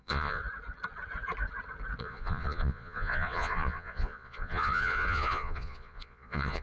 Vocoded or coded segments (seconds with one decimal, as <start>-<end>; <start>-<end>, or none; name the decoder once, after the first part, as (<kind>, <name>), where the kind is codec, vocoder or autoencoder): 0.0-0.4 (vocoder, Vocos); 2.0-6.6